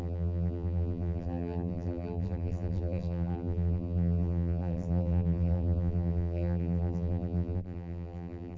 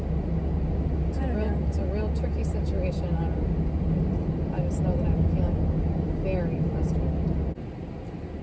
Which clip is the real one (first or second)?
second